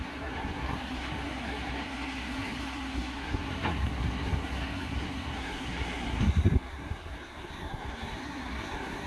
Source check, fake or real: fake